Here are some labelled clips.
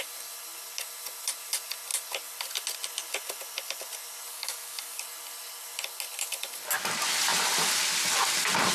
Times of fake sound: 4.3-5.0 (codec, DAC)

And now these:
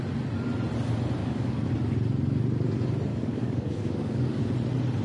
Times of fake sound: 1.2-1.7 (codec, DAC); 3.1-4.4